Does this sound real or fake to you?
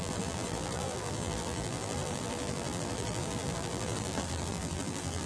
fake